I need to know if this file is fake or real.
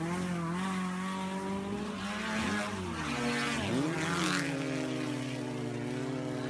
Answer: real